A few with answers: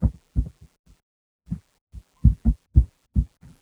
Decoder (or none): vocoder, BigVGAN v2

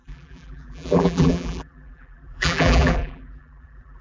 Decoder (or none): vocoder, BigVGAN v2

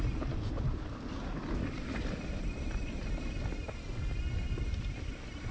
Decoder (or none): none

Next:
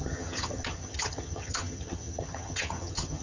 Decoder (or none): vocoder, HiFi-GAN